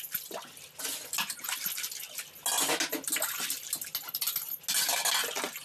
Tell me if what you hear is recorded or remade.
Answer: recorded